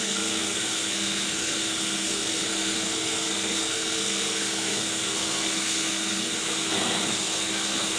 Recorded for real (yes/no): no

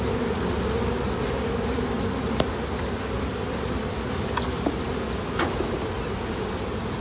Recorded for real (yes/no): yes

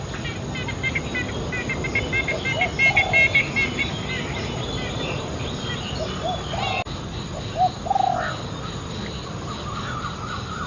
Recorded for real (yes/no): yes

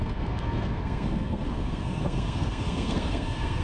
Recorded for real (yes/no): no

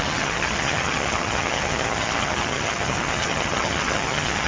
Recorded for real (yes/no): no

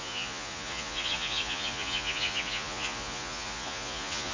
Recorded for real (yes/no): no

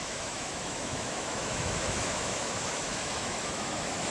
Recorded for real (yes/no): no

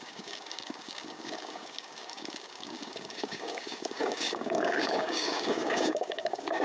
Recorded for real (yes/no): no